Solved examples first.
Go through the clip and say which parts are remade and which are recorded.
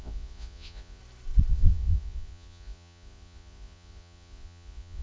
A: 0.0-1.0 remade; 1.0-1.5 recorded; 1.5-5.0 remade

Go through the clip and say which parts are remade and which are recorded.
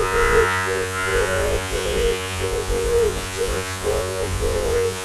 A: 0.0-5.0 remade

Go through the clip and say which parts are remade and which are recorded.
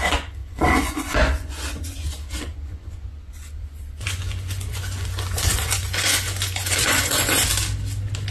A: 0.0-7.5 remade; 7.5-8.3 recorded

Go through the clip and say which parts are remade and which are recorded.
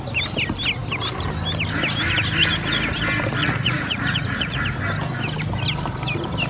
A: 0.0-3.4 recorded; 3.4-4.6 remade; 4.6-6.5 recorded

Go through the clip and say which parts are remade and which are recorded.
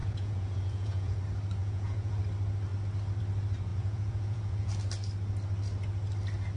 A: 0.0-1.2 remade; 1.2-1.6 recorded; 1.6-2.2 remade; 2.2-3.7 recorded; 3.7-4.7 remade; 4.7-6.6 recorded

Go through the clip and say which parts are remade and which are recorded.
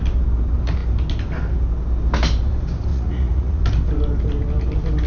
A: 0.0-2.9 recorded; 2.9-3.6 remade; 3.6-5.1 recorded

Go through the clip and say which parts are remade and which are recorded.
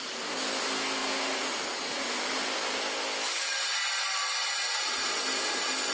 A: 0.0-5.9 recorded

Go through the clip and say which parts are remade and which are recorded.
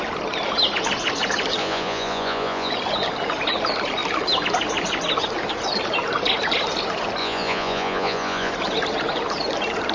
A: 0.0-1.6 recorded; 1.6-2.7 remade; 2.7-7.2 recorded; 7.2-8.5 remade; 8.5-9.9 recorded